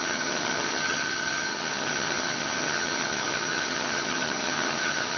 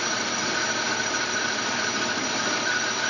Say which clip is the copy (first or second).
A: first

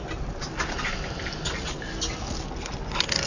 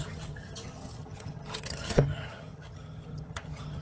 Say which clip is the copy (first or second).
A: second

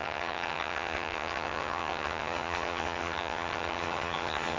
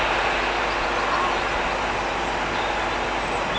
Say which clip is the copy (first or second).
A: first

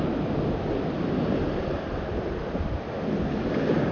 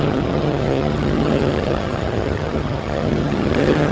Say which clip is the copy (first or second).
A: second